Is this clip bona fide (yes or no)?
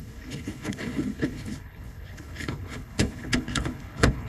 no